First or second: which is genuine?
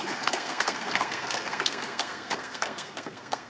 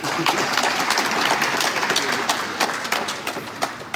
second